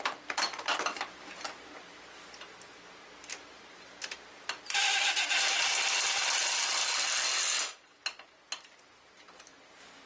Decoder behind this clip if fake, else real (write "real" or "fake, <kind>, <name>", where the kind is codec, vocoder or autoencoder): real